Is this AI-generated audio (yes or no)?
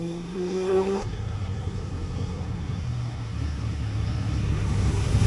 yes